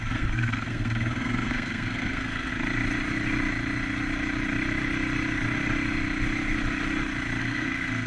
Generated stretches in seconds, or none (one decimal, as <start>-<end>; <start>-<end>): 0.0-2.5; 7.4-8.1